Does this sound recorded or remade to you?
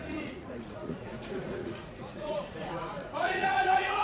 remade